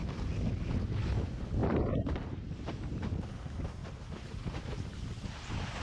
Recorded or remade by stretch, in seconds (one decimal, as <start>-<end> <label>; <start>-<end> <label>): 0.0-1.6 recorded; 1.6-3.1 remade; 3.1-3.8 recorded; 3.8-5.8 remade